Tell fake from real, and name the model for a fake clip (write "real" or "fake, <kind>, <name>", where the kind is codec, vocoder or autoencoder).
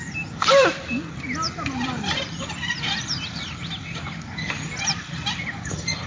fake, vocoder, BigVGAN v2